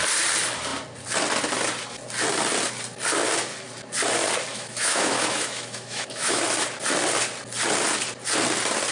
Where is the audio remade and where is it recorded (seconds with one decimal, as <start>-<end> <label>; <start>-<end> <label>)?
0.0-4.5 recorded; 4.5-6.4 remade; 6.4-8.9 recorded